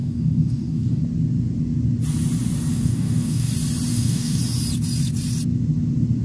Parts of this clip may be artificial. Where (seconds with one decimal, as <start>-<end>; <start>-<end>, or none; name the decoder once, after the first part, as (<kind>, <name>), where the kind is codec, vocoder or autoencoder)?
0.0-1.0 (codec, DAC); 2.7-3.5; 3.9-4.4